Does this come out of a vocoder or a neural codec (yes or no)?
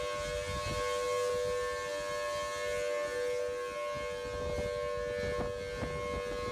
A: no